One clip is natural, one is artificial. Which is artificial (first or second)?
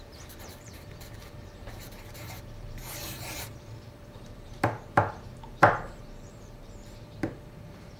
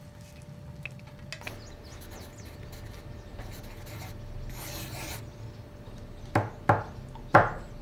first